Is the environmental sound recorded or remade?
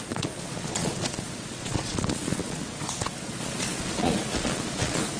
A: remade